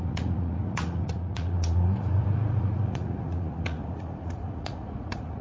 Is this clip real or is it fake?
fake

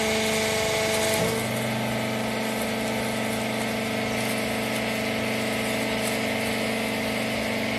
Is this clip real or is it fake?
real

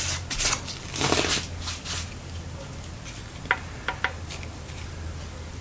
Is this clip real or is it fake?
real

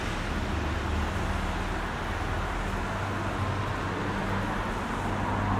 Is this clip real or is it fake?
real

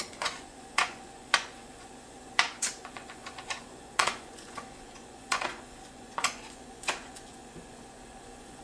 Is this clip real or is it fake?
fake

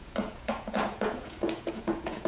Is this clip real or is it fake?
fake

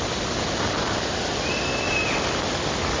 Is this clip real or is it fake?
real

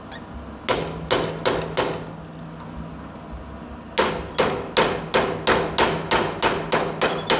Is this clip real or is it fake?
real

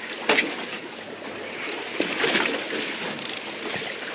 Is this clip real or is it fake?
real